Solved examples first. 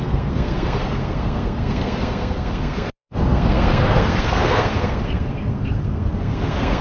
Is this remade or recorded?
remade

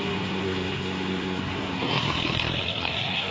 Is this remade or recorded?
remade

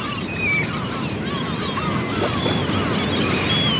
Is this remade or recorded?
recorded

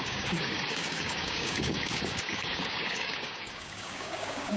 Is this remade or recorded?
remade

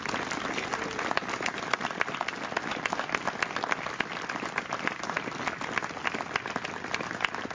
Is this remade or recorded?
recorded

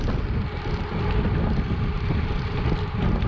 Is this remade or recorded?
recorded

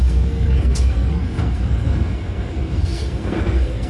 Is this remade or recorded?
remade